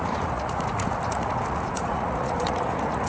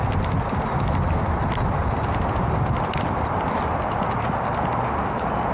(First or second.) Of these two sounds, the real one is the second